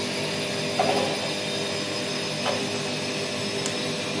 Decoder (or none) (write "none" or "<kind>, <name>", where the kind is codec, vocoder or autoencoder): none